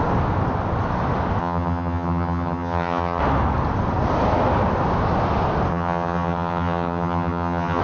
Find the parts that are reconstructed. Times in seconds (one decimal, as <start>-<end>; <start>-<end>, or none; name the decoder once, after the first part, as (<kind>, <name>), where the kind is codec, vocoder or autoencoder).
1.4-3.2 (vocoder, HiFi-GAN); 5.7-7.8